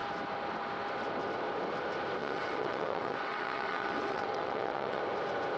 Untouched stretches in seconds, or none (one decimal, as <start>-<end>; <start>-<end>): 0.0-2.2; 5.0-5.6